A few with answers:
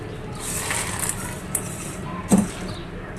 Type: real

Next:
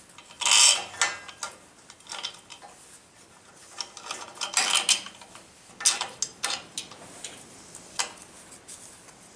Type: real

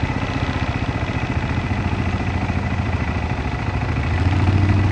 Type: real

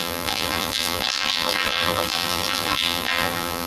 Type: fake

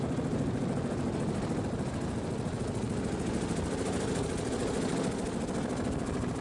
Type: real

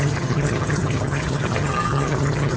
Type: fake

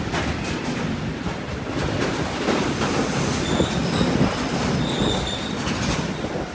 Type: real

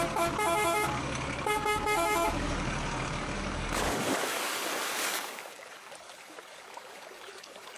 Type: fake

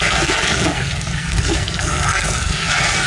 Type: fake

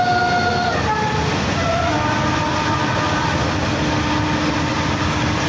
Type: real